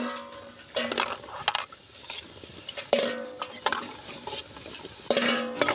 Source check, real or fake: real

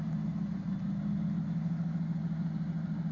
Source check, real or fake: real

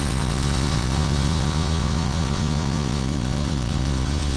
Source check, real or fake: fake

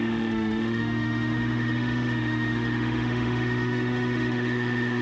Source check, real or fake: fake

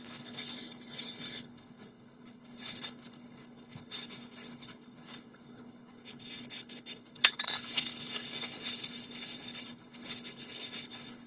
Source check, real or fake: fake